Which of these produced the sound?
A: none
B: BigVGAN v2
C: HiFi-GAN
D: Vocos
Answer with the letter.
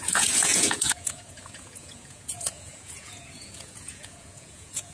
D